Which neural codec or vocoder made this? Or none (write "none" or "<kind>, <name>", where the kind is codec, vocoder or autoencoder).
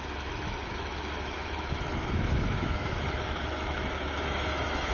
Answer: autoencoder, DAC-VAE